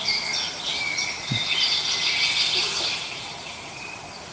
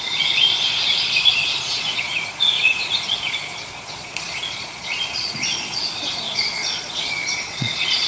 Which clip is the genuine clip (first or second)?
first